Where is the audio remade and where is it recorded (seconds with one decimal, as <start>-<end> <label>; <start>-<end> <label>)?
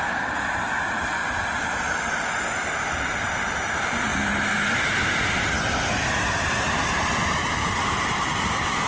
0.0-7.4 recorded; 7.4-8.9 remade